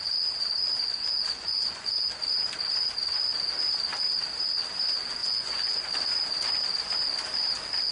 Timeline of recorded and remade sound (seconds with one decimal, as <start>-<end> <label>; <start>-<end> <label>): 0.0-0.9 recorded; 0.9-2.1 remade; 2.1-5.2 recorded; 5.2-5.8 remade; 5.8-7.9 recorded